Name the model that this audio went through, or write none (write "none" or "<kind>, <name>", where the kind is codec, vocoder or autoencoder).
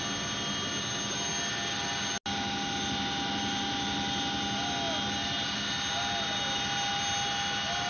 none